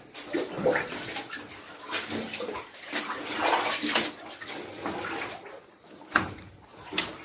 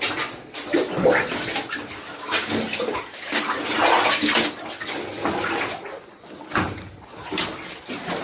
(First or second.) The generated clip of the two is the first